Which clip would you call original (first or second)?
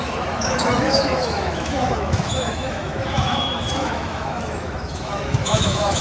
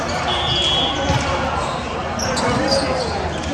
second